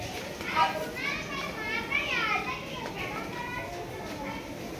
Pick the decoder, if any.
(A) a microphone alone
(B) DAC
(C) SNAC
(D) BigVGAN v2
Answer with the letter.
A